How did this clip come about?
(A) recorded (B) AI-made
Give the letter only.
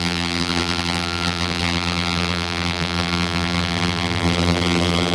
B